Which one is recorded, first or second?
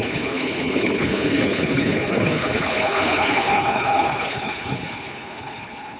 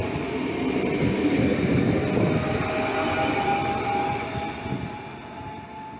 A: second